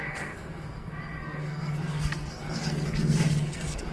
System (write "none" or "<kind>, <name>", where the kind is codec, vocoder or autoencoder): codec, SNAC